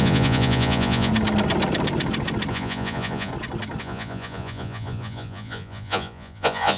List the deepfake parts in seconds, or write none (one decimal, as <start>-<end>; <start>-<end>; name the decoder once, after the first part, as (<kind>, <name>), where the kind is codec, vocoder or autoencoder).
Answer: 0.0-1.1 (vocoder, Vocos); 2.5-3.3; 3.8-6.8

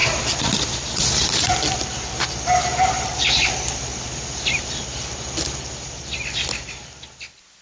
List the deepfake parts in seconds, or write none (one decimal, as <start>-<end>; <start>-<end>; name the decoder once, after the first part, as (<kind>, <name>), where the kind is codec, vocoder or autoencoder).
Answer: none

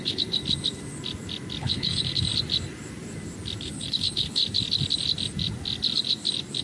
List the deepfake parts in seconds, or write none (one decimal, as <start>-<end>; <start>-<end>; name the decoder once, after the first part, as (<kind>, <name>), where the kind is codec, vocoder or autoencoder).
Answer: 0.0-0.4 (codec, HILCodec); 1.6-2.3; 3.6-4.4

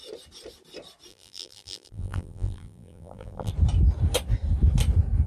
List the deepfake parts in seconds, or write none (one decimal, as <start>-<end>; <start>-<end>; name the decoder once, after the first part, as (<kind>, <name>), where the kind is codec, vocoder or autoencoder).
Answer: 1.1-3.5 (vocoder, BigVGAN v2)

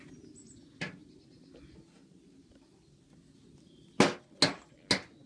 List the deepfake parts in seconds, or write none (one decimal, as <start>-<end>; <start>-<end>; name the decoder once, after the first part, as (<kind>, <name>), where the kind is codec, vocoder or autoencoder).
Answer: none

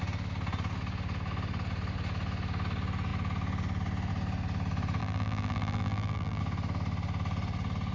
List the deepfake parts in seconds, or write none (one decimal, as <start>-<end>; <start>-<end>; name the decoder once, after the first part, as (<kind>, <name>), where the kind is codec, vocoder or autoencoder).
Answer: 5.0-6.4 (vocoder, BigVGAN v2)

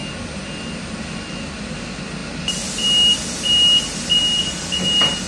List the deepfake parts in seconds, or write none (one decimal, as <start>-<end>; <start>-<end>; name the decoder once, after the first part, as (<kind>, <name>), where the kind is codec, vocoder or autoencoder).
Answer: none